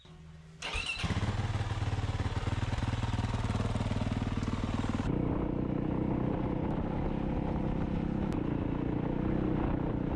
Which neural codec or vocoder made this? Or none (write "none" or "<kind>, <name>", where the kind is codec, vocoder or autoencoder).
none